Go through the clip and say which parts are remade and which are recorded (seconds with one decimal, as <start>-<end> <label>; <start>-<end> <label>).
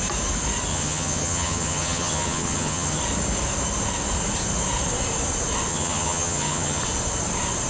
0.0-0.7 recorded; 0.7-3.0 remade; 3.0-5.7 recorded; 5.7-6.8 remade; 6.8-7.7 recorded